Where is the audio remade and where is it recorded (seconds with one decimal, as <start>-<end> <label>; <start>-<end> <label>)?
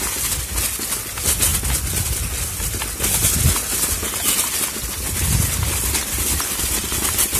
0.0-7.4 recorded